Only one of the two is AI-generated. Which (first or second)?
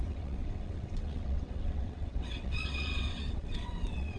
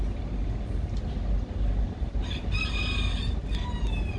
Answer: first